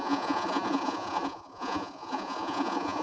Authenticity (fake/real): fake